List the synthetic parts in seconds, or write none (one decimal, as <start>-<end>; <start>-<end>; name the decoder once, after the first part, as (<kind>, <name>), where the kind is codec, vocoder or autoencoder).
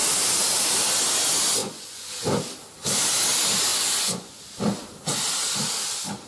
1.6-2.1 (vocoder, Vocos); 3.7-4.4